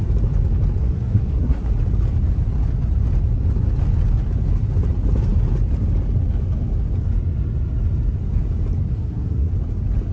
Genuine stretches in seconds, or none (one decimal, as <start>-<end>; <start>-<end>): 0.0-0.8; 1.7-8.9; 9.5-10.1